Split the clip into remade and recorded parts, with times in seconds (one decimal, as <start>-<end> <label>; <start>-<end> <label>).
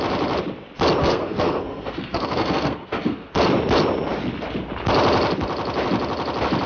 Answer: 0.0-1.0 recorded; 1.0-3.3 remade; 3.3-6.7 recorded